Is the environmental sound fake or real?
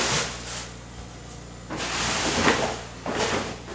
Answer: real